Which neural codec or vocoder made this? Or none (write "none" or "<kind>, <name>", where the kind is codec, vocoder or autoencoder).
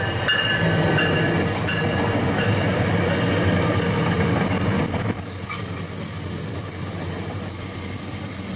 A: none